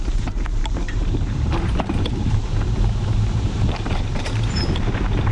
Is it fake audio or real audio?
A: fake